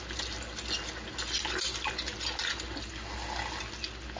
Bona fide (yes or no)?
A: yes